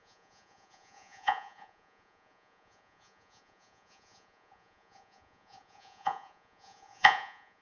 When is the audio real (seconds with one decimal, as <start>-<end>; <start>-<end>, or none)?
none